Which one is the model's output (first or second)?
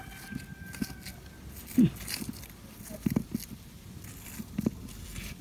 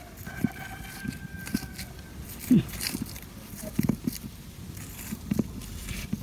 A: second